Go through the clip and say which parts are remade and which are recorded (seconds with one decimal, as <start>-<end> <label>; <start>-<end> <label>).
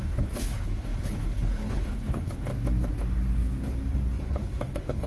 0.0-2.5 remade; 2.5-4.2 recorded; 4.2-5.1 remade